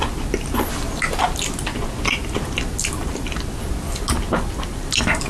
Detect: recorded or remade recorded